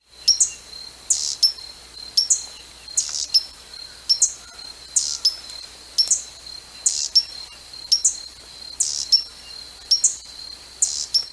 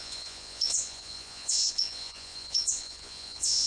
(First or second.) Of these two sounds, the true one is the first